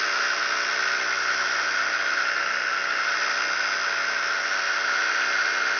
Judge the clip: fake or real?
real